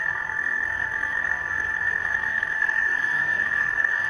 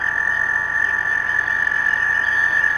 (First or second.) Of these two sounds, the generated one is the first